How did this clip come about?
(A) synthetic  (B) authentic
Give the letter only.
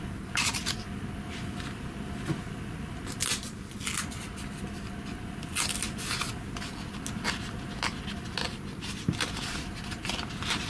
B